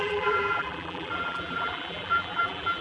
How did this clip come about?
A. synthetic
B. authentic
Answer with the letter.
A